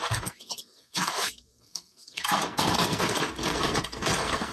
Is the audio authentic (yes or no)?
no